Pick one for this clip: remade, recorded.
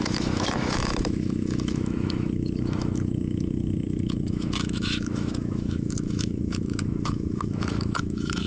remade